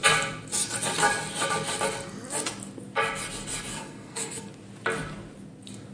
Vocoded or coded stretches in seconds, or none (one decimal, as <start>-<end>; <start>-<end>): 3.7-4.5